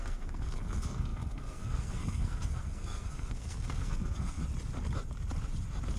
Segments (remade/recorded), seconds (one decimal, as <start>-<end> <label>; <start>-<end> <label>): 0.0-4.4 remade; 4.4-6.0 recorded